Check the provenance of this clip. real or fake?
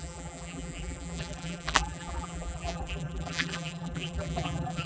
fake